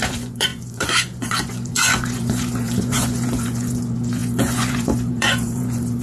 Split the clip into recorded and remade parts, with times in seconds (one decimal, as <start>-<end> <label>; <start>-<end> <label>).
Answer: 0.0-6.0 remade